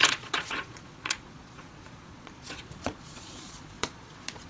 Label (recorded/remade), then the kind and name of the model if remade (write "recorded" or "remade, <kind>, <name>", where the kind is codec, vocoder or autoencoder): remade, vocoder, Vocos